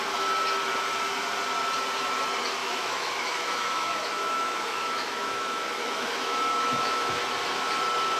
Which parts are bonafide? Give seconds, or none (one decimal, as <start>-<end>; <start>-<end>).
0.0-2.6; 7.2-8.2

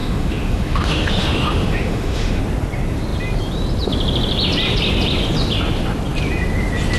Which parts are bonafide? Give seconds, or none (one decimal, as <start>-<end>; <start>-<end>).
2.4-7.0